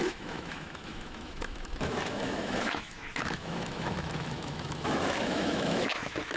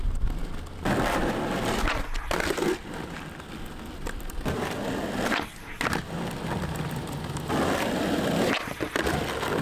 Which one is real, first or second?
second